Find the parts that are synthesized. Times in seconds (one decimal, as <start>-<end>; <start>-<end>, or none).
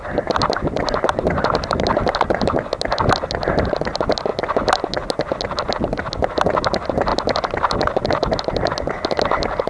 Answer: none